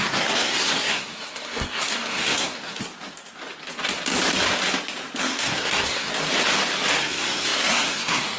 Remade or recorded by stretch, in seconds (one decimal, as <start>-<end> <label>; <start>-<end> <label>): 0.0-2.9 remade; 2.9-5.2 recorded; 5.2-6.1 remade; 6.1-7.0 recorded; 7.0-8.4 remade